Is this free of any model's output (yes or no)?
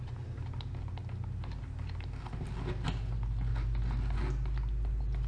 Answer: yes